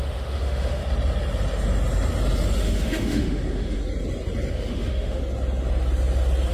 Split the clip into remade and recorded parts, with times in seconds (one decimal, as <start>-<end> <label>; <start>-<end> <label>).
0.0-0.8 remade; 0.8-2.6 recorded; 2.6-3.8 remade; 3.8-4.5 recorded; 4.5-5.2 remade; 5.2-6.5 recorded